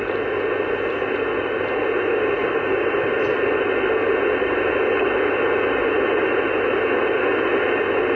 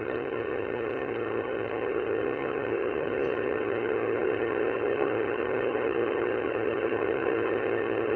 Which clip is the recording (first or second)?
first